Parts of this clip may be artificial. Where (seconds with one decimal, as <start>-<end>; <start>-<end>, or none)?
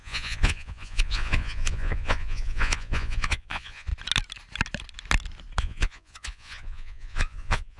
0.0-3.9; 5.6-7.8